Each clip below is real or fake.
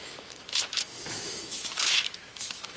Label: fake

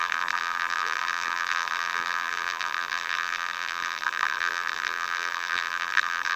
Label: fake